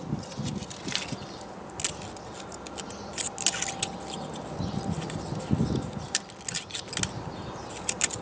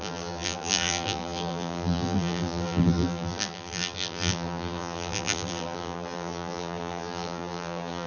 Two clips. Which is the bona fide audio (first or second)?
first